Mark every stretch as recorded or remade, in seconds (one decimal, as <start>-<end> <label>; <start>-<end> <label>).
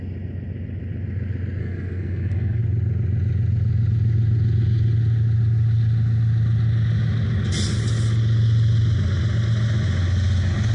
0.0-1.6 recorded; 1.6-2.6 remade; 2.6-10.7 recorded